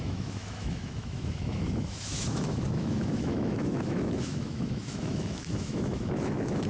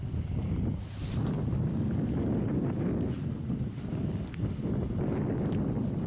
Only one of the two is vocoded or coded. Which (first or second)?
first